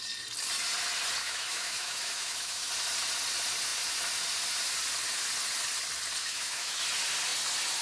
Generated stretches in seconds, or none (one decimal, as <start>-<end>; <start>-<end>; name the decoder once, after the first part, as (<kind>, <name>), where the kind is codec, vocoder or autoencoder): 1.2-2.7 (autoencoder, DAC-VAE); 6.2-6.8